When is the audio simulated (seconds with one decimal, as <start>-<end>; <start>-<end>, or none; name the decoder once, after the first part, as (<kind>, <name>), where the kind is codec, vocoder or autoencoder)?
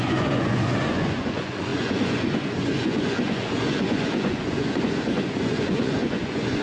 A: 0.0-6.6 (vocoder, Vocos)